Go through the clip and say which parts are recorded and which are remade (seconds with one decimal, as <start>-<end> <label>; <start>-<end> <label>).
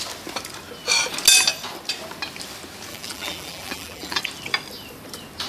0.0-2.9 recorded; 2.9-4.2 remade; 4.2-5.5 recorded